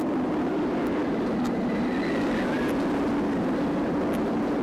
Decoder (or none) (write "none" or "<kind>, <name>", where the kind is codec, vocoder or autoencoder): none